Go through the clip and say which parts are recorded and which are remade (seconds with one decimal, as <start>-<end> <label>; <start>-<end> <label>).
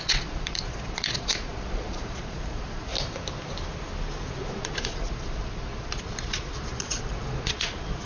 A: 0.0-2.9 remade; 2.9-4.5 recorded; 4.5-8.1 remade